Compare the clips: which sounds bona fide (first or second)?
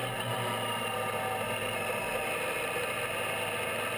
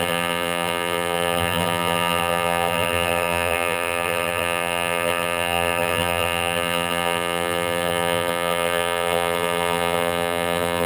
first